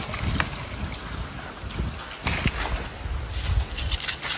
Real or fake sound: real